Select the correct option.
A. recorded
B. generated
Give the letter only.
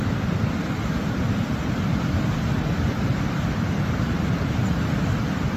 A